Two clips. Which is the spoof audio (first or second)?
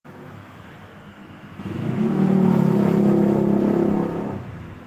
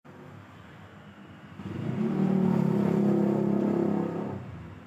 first